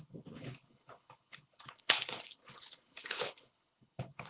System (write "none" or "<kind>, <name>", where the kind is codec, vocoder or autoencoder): codec, HILCodec